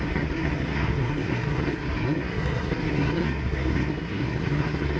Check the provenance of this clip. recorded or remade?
remade